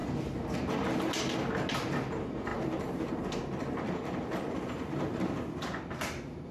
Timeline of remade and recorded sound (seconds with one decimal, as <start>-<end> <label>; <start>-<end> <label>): 0.0-2.5 recorded; 2.5-3.1 remade; 3.1-6.5 recorded